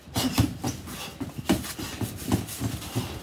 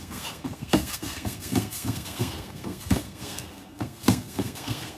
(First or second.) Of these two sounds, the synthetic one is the second